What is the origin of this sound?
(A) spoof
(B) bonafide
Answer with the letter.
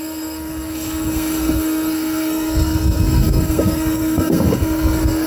A